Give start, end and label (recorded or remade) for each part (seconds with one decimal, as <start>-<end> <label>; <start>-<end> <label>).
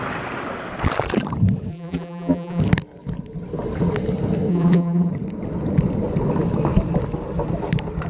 0.0-1.7 recorded; 1.7-2.6 remade; 2.6-4.5 recorded; 4.5-5.1 remade; 5.1-8.1 recorded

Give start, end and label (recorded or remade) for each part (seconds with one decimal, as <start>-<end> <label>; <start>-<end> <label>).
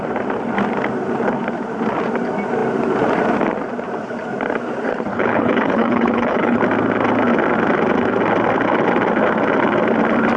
0.0-5.1 recorded; 5.1-6.6 remade; 6.6-10.4 recorded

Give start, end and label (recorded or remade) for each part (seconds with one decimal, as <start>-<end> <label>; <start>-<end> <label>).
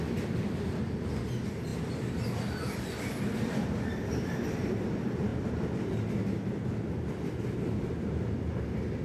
0.0-1.7 recorded; 1.7-4.7 remade; 4.7-9.0 recorded